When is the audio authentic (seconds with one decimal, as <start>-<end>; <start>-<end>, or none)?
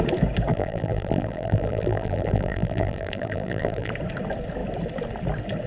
0.0-0.5; 3.9-5.7